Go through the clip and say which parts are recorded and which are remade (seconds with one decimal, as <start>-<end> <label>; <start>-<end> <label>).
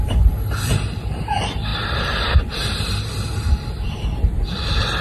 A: 0.0-5.0 recorded